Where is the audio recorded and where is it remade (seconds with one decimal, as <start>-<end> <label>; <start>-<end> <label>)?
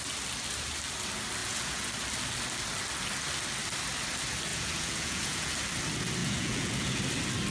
0.0-1.4 recorded; 1.4-1.9 remade; 1.9-4.5 recorded; 4.5-5.5 remade; 5.5-6.2 recorded; 6.2-7.0 remade; 7.0-7.5 recorded